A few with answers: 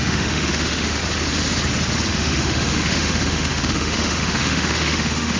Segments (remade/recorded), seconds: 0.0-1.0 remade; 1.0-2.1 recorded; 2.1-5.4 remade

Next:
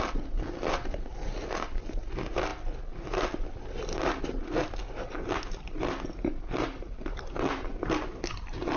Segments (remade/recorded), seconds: 0.0-8.8 recorded

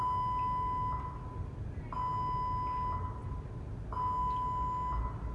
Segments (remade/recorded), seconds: 0.0-5.3 recorded

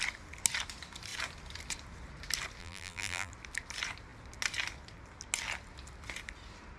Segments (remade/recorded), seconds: 0.0-2.6 recorded; 2.6-3.3 remade; 3.3-6.8 recorded

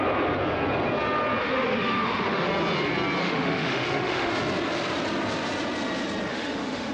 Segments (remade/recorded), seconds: 0.0-1.4 recorded; 1.4-2.5 remade; 2.5-3.2 recorded; 3.2-4.3 remade; 4.3-6.3 recorded; 6.3-6.9 remade

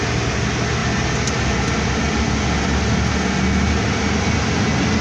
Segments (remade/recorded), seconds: 0.0-5.0 recorded

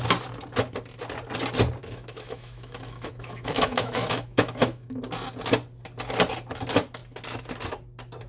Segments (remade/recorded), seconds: 0.0-1.8 recorded; 1.8-5.0 remade; 5.0-8.3 recorded